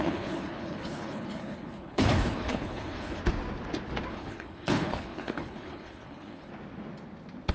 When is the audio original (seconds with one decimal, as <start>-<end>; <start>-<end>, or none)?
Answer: 3.2-4.1; 6.5-7.5